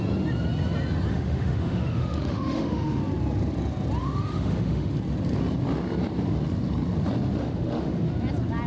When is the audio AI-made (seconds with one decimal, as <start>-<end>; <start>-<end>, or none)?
1.1-3.0; 4.0-4.9; 7.4-8.1